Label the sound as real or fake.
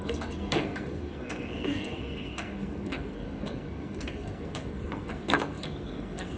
fake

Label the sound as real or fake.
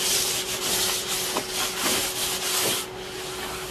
real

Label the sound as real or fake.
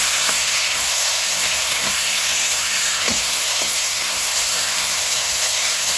fake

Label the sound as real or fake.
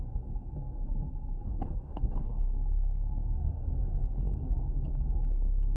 fake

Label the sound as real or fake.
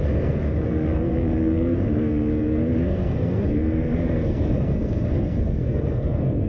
fake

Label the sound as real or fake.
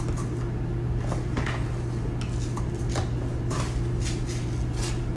real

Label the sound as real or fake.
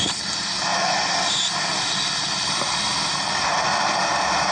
real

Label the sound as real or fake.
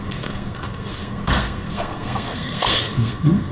fake